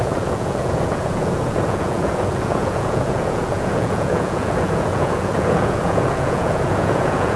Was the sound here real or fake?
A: fake